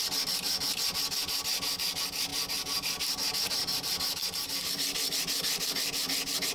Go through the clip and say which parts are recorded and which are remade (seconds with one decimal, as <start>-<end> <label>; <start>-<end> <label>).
0.0-6.5 recorded